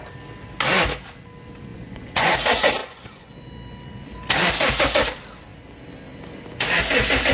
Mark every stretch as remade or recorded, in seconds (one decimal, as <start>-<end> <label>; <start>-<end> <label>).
0.0-1.7 recorded; 1.7-2.3 remade; 2.3-2.8 recorded; 2.8-3.3 remade; 3.3-7.3 recorded